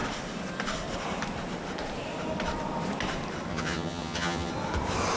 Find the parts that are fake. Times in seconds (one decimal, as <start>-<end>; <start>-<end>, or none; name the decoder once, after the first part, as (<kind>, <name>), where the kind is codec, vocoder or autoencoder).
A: 3.5-4.5 (vocoder, HiFi-GAN)